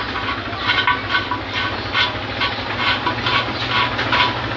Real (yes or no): yes